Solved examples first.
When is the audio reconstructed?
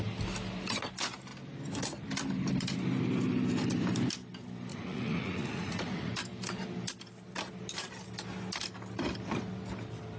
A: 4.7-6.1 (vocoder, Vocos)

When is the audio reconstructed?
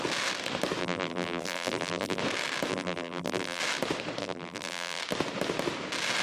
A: 0.8-2.2 (vocoder, BigVGAN v2); 2.7-3.6; 4.2-5.0